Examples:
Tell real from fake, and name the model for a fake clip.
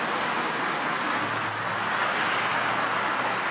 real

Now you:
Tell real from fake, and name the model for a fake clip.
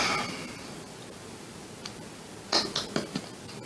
real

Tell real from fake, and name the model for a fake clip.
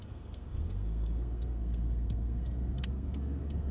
fake, codec, SNAC